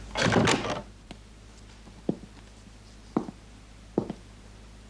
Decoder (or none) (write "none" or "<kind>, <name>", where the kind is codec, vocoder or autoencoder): none